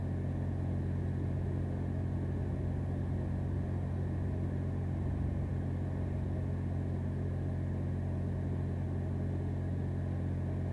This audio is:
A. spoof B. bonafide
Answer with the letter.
B